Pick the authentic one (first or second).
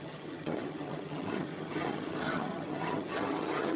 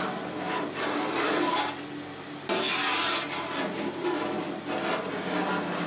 second